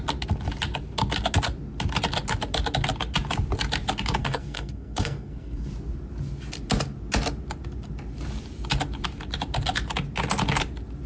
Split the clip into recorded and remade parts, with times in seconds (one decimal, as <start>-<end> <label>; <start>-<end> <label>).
0.0-4.2 recorded; 4.2-5.7 remade; 5.7-11.1 recorded